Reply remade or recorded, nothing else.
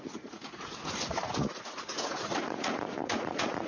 remade